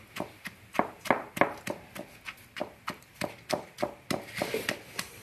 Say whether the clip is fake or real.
real